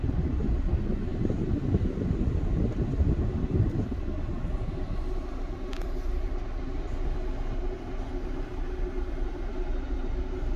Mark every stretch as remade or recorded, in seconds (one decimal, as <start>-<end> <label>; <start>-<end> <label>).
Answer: 0.0-10.6 recorded